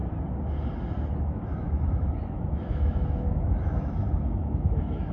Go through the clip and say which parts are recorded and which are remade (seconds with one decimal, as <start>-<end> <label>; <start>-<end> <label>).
0.0-1.2 recorded; 1.2-5.1 remade